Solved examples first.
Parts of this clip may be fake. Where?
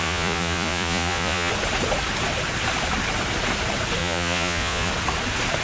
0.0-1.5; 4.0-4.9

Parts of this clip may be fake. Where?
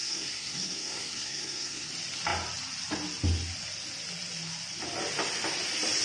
0.0-1.9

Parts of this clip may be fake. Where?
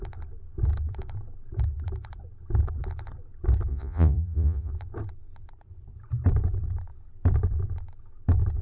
3.7-4.7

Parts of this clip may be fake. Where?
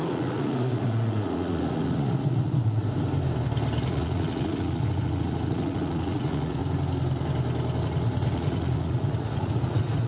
0.0-2.8; 3.8-6.6; 7.8-10.1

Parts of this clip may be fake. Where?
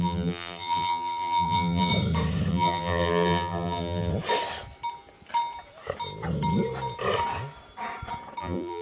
0.0-1.9; 2.5-4.1; 8.4-8.8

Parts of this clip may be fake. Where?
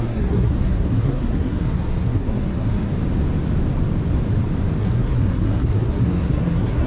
0.0-2.9; 4.8-6.9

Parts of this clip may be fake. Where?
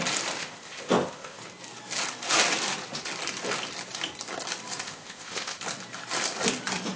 0.4-1.4; 4.8-5.6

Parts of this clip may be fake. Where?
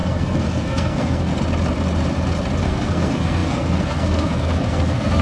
0.0-1.3; 2.6-5.2